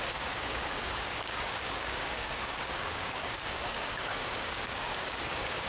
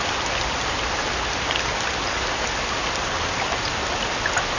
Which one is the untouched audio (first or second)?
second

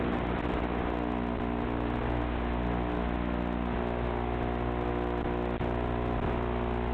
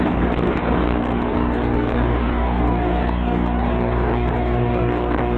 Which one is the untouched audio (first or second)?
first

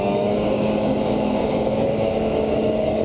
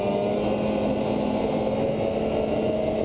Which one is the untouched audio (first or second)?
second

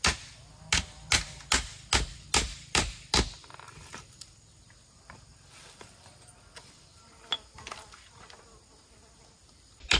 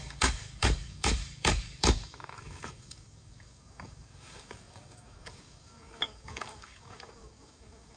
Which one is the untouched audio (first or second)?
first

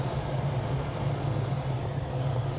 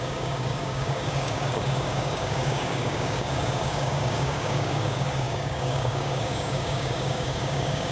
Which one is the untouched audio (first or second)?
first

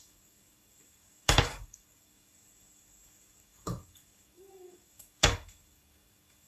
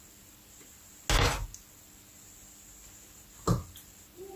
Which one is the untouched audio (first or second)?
second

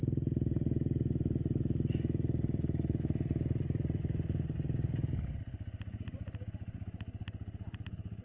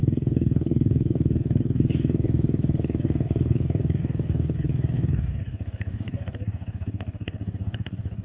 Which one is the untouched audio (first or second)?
first